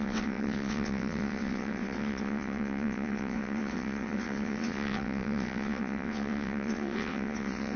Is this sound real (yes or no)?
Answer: no